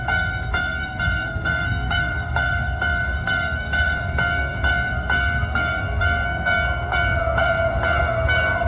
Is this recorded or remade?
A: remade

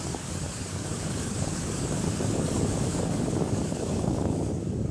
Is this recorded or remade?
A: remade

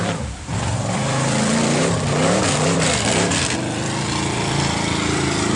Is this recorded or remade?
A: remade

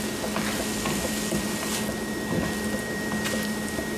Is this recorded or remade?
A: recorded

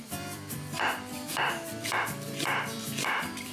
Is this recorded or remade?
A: remade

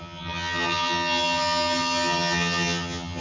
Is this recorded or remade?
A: remade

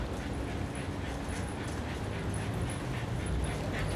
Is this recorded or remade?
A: recorded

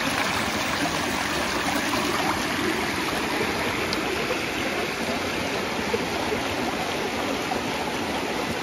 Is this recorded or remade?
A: recorded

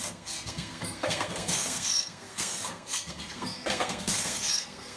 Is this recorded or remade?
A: remade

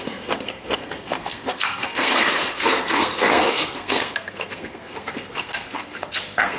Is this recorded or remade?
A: remade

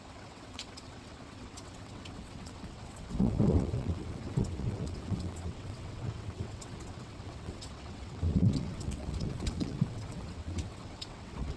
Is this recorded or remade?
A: remade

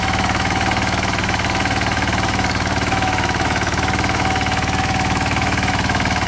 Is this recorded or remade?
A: remade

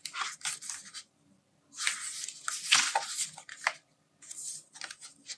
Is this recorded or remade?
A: recorded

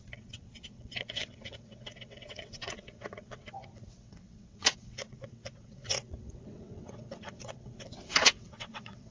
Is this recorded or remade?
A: remade